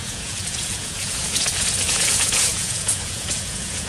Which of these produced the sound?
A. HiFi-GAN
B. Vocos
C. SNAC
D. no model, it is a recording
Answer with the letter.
B